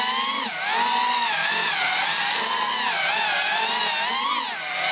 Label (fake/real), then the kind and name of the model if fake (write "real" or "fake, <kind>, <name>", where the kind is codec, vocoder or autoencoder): real